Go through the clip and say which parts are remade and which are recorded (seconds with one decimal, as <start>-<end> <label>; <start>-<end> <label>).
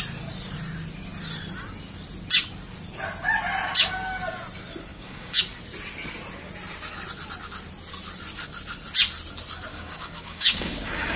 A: 0.0-4.9 recorded; 4.9-5.4 remade; 5.4-9.7 recorded; 9.7-11.2 remade